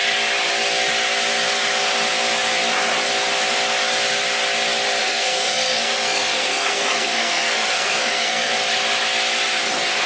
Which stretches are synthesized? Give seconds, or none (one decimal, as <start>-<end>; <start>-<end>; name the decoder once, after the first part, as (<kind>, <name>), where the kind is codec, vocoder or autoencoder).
5.0-8.5 (codec, SNAC)